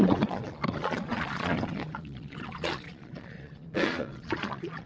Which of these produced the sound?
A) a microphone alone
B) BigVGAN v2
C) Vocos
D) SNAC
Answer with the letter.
C